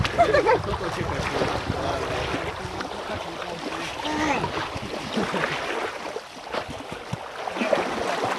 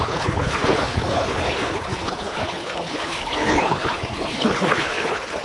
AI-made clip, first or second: second